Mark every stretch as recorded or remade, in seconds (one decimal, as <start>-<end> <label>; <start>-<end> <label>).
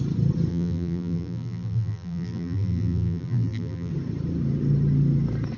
0.0-0.5 recorded; 0.5-3.9 remade; 3.9-5.6 recorded